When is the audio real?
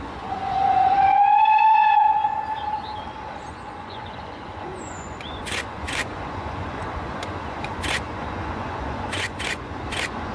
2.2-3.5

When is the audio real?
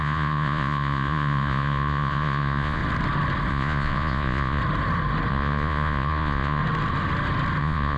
2.8-3.5; 4.6-5.3; 6.6-7.6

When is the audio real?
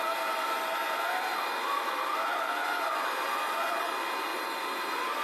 0.0-5.2